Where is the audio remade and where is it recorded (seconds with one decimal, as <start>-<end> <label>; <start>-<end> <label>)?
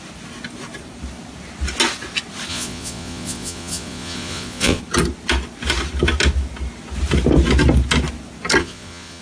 0.0-2.5 recorded; 2.5-4.8 remade; 4.8-8.6 recorded; 8.6-9.2 remade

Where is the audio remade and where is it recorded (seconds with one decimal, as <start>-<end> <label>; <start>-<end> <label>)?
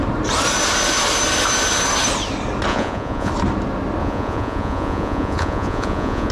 0.0-2.7 recorded; 2.7-3.3 remade; 3.3-4.0 recorded; 4.0-6.3 remade